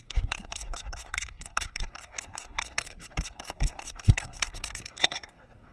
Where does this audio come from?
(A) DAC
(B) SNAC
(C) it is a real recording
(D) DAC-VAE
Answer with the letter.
B